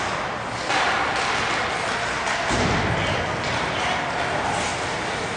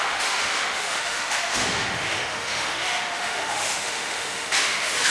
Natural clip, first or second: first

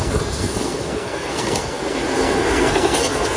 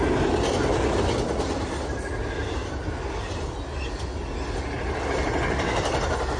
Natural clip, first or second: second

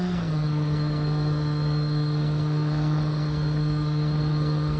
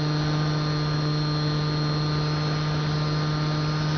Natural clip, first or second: second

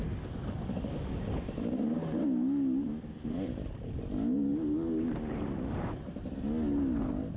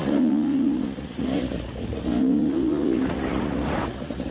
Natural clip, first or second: first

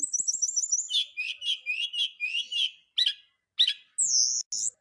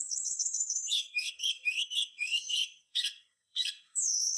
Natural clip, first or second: first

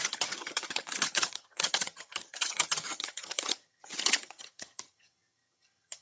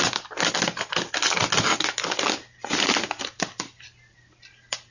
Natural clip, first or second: second